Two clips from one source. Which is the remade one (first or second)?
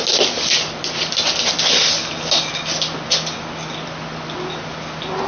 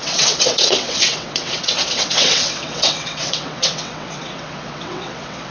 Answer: second